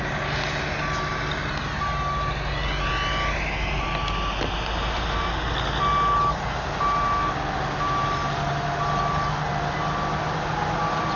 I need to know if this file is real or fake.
real